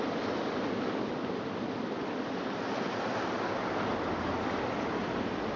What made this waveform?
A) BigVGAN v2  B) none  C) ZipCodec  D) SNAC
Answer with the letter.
B